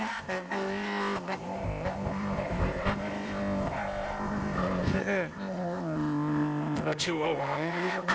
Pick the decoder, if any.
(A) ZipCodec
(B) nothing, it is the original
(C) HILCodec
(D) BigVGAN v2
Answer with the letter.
A